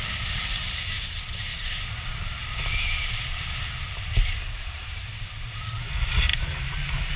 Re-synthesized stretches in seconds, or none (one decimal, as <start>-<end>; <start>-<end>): none